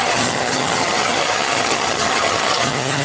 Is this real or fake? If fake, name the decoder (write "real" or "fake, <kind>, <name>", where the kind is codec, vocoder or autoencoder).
fake, vocoder, HiFi-GAN